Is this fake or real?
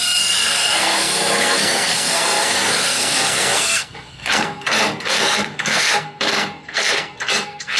fake